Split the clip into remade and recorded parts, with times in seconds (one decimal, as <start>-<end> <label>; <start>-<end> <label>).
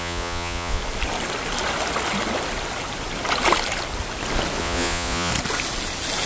0.0-0.8 remade; 0.8-4.6 recorded; 4.6-5.3 remade; 5.3-6.3 recorded